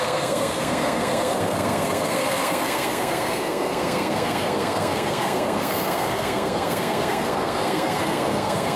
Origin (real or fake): fake